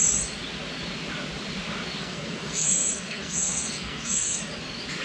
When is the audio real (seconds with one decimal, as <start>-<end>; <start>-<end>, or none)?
0.0-2.0; 4.4-5.0